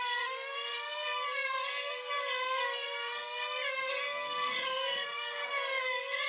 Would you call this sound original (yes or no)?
no